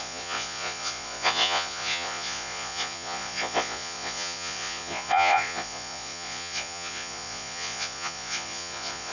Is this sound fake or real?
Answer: fake